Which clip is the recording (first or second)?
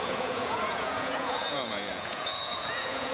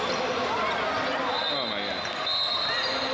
second